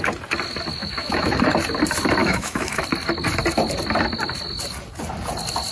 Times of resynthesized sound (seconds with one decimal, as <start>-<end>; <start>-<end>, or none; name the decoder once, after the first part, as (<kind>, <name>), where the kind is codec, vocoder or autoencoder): 0.8-1.4 (autoencoder, DAC-VAE); 2.2-2.8